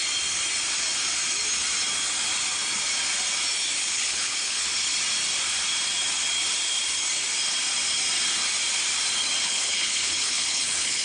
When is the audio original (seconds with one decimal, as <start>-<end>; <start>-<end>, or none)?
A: 0.0-3.8; 4.7-9.4